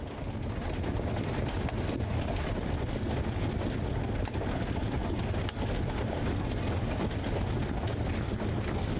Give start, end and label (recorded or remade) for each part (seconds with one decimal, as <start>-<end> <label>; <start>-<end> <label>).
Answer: 0.0-9.0 recorded